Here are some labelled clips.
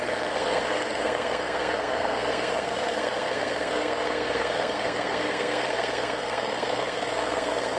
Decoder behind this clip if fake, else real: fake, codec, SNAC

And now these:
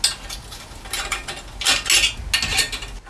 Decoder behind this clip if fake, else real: real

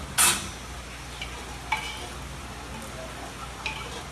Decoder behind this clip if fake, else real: real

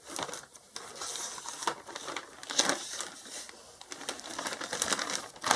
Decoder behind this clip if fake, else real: real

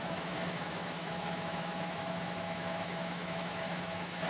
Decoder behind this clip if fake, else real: fake, autoencoder, DAC-VAE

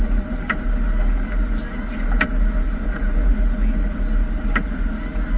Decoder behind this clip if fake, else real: real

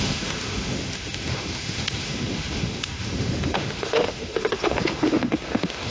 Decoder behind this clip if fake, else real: fake, autoencoder, DAC-VAE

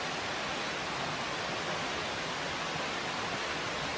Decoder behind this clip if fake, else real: real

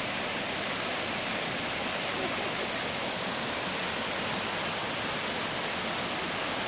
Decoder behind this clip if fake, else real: real